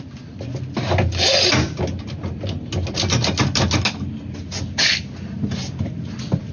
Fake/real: real